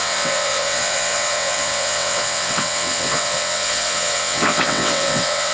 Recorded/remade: remade